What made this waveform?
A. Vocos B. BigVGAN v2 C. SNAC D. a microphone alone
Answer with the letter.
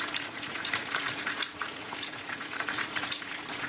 A